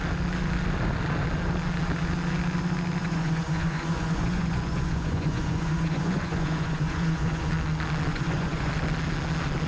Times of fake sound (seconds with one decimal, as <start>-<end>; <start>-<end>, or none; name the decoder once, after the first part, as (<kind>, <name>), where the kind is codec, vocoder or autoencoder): 3.0-7.5 (vocoder, Vocos); 8.1-8.7